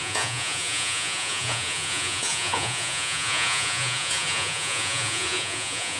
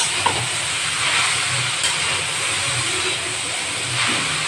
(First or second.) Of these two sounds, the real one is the second